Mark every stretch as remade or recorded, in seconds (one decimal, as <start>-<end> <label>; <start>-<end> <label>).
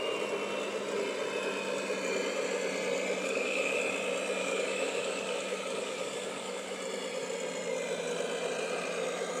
0.0-3.2 recorded; 3.2-3.8 remade; 3.8-4.4 recorded; 4.4-6.8 remade; 6.8-9.4 recorded